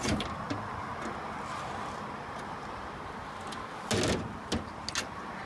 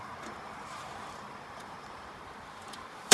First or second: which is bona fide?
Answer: first